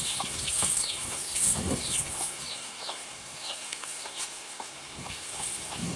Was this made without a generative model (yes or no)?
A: no